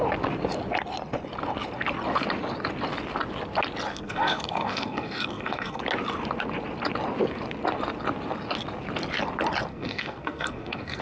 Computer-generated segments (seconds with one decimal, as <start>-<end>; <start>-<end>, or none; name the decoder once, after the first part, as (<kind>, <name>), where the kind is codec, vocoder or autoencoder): 3.9-5.8 (codec, SNAC); 9.7-11.0